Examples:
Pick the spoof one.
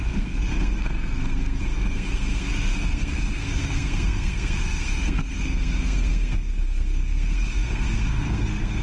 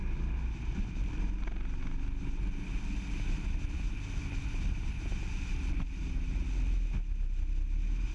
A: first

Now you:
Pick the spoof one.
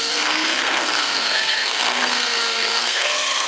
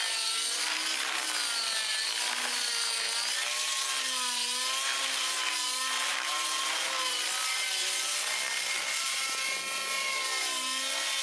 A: first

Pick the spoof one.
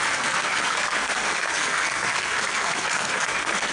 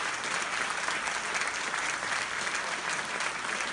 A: first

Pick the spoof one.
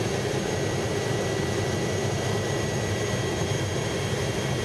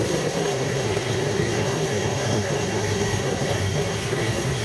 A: second